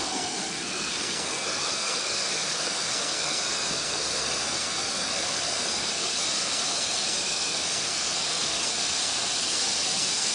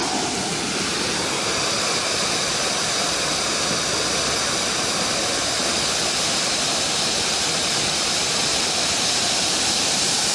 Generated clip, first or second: first